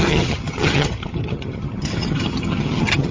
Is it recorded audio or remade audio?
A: remade